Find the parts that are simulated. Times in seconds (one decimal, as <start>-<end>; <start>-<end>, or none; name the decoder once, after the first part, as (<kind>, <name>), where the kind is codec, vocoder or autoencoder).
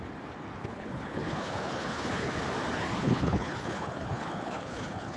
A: 0.6-2.4 (codec, HILCodec); 3.0-5.2